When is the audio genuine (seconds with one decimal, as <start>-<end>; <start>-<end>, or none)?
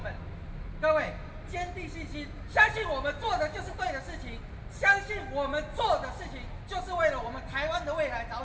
0.0-8.4